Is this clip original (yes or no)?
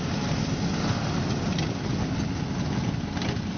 yes